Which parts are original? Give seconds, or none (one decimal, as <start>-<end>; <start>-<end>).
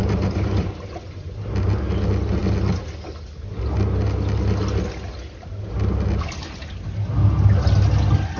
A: 1.3-8.4